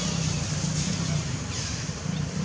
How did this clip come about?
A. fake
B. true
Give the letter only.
B